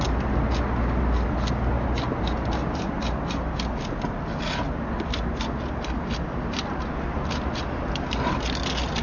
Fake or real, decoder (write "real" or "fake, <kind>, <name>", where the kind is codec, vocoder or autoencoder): real